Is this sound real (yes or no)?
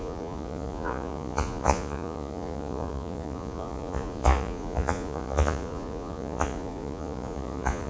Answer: no